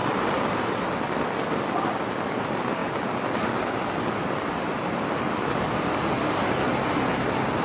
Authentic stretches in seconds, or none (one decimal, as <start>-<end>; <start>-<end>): 0.0-7.6